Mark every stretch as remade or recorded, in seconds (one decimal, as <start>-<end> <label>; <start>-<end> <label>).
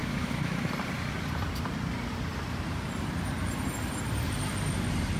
0.0-0.7 remade; 0.7-5.2 recorded